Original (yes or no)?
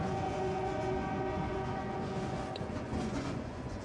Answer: no